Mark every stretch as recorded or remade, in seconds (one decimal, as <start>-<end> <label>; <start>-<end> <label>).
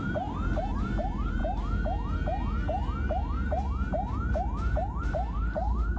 0.0-1.4 remade; 1.4-5.0 recorded; 5.0-6.0 remade